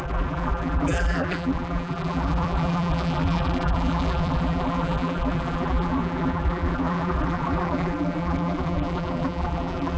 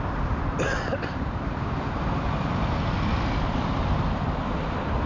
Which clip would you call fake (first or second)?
first